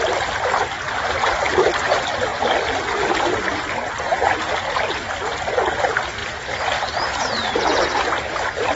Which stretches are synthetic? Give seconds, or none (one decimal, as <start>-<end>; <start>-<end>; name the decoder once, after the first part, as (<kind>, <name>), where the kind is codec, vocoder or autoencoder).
6.2-7.6 (vocoder, BigVGAN v2)